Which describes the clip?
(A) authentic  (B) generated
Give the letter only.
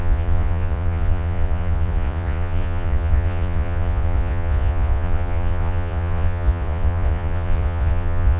B